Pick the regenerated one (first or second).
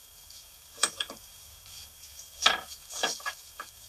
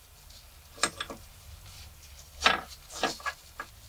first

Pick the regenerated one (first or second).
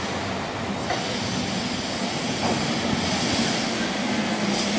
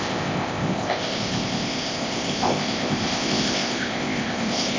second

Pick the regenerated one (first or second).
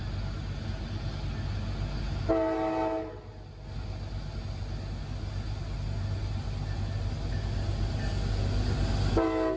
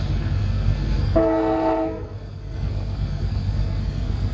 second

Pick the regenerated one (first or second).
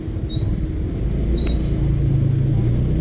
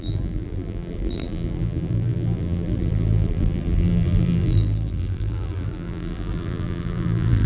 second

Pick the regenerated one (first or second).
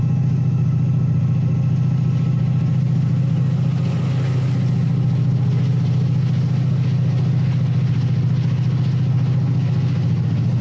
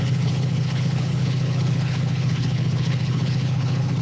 second